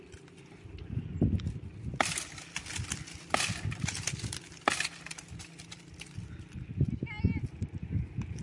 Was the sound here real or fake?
real